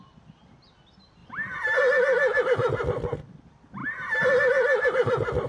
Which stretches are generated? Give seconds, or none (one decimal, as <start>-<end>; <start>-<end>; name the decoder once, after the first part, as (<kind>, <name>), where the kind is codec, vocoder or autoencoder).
1.2-1.8 (vocoder, BigVGAN v2); 3.8-4.3